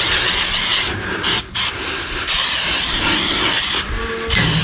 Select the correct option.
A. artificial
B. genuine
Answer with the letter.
B